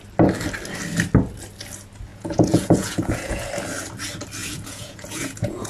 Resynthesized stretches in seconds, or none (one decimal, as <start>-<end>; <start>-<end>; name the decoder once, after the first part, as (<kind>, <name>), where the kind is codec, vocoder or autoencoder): 2.1-3.5 (vocoder, Vocos); 4.4-5.7